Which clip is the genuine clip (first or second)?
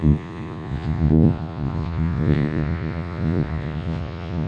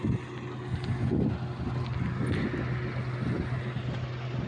second